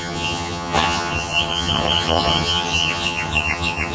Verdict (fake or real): fake